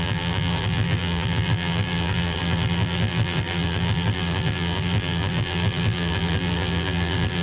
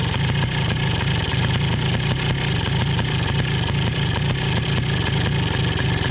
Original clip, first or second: second